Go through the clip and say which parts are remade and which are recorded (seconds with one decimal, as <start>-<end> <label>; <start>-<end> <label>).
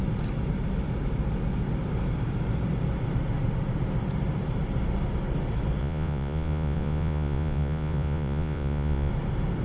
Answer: 0.0-5.8 recorded; 5.8-9.1 remade; 9.1-9.6 recorded